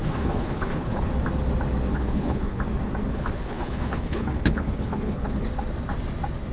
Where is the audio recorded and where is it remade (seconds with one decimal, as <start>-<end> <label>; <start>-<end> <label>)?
0.0-1.1 remade; 1.1-1.9 recorded; 1.9-2.6 remade; 2.6-3.1 recorded; 3.1-5.4 remade; 5.4-6.5 recorded

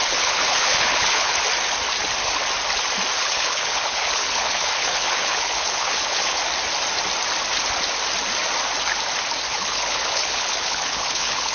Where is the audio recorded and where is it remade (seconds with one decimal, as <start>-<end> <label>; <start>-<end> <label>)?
0.0-1.3 remade; 1.3-3.2 recorded; 3.2-6.4 remade; 6.4-9.5 recorded; 9.5-11.5 remade